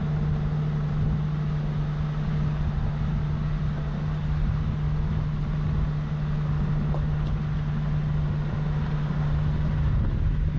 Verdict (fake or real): real